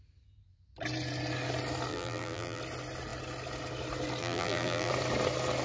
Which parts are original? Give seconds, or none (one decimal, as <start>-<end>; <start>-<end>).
0.0-1.9; 2.6-4.2; 4.9-5.6